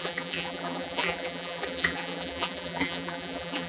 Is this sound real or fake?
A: fake